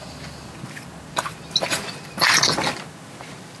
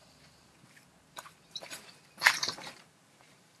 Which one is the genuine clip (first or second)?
first